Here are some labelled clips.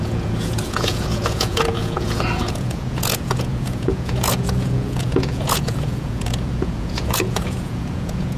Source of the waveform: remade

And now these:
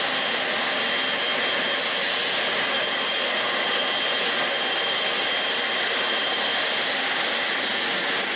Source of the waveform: recorded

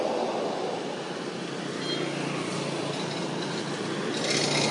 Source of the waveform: recorded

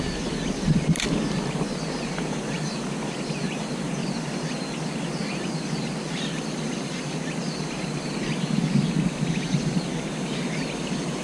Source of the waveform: recorded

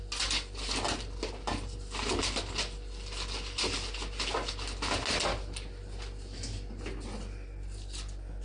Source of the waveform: recorded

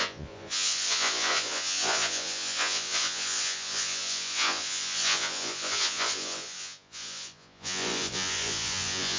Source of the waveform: remade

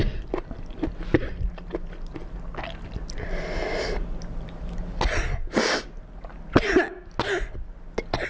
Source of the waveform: recorded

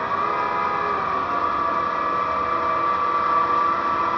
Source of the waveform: recorded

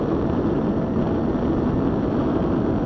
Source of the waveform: recorded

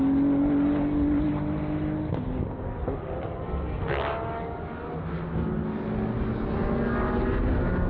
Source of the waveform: recorded